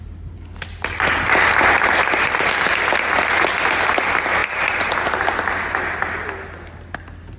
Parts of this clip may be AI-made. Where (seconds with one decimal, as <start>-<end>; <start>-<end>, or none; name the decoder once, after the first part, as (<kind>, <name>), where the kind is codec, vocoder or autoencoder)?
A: 4.4-5.1 (vocoder, BigVGAN v2)